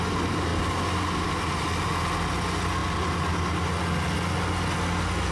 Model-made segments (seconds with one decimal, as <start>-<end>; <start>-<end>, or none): none